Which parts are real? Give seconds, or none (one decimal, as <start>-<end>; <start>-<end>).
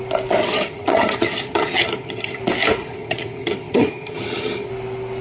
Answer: 0.0-0.4; 2.4-2.8; 4.7-5.2